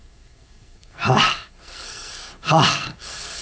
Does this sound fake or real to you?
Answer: fake